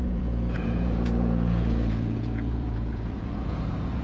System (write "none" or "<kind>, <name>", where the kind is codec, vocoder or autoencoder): vocoder, Vocos